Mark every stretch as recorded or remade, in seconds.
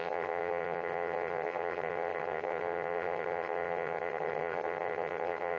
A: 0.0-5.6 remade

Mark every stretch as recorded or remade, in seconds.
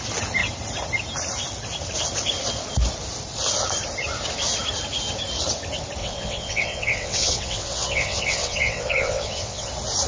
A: 0.0-6.0 recorded; 6.0-9.7 remade; 9.7-10.1 recorded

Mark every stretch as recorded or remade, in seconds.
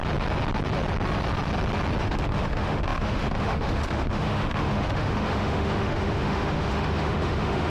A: 0.0-2.0 recorded; 2.0-7.7 remade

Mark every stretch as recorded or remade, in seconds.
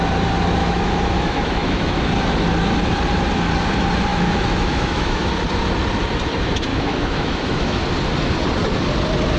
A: 0.0-0.6 recorded; 0.6-2.0 remade; 2.0-4.1 recorded; 4.1-5.3 remade; 5.3-6.7 recorded; 6.7-7.8 remade; 7.8-9.4 recorded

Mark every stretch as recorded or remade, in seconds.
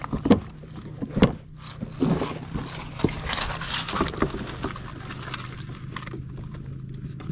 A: 0.0-1.2 remade; 1.2-7.3 recorded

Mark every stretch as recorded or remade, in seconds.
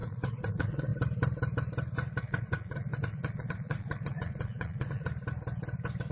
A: 0.0-0.9 remade; 0.9-2.2 recorded; 2.2-5.1 remade; 5.1-6.1 recorded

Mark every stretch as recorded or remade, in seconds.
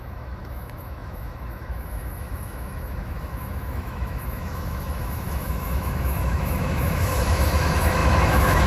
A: 0.0-8.7 remade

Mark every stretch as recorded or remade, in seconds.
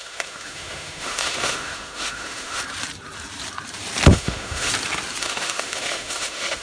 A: 0.0-2.6 remade; 2.6-4.1 recorded; 4.1-4.7 remade; 4.7-5.2 recorded; 5.2-6.6 remade